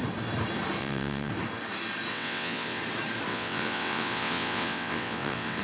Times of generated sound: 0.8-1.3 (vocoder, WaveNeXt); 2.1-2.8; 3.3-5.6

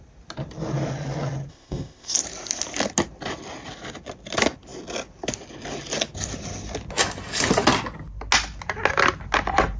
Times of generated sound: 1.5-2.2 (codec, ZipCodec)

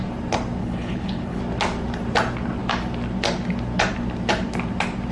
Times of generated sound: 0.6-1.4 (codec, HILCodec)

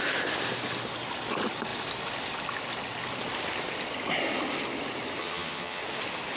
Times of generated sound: 5.2-5.8 (vocoder, HiFi-GAN)

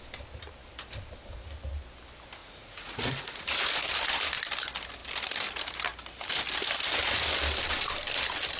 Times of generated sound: 2.4-3.4 (vocoder, Vocos)

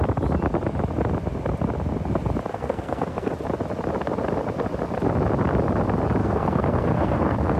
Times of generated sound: 2.5-3.3 (codec, SNAC); 6.2-7.6